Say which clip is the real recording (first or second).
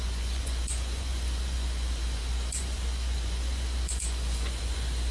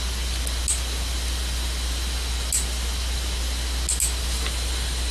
second